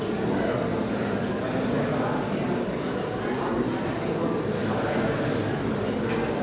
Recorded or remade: recorded